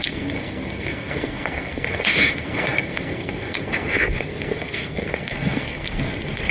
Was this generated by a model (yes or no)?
yes